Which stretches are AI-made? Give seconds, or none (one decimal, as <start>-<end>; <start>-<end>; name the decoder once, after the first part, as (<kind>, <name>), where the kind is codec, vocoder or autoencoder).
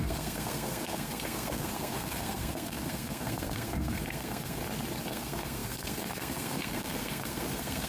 0.0-4.6 (codec, SNAC); 5.1-7.9